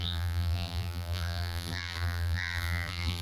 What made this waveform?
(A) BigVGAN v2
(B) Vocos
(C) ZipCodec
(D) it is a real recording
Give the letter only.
A